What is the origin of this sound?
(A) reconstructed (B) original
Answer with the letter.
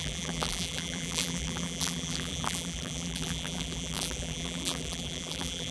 A